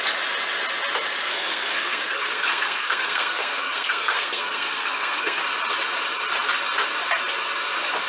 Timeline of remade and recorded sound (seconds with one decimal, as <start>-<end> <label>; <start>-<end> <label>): 0.0-1.3 recorded; 1.3-5.4 remade; 5.4-8.1 recorded